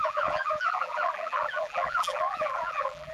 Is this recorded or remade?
remade